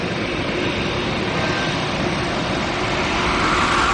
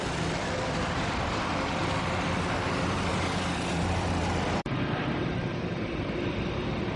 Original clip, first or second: first